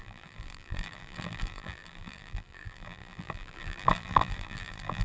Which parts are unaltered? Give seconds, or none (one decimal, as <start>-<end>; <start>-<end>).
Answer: none